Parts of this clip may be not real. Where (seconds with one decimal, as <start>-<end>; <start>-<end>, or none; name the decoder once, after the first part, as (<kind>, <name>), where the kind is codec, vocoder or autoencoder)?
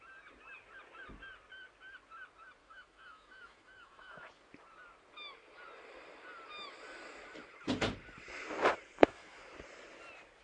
2.6-4.3 (autoencoder, DAC-VAE); 9.0-9.5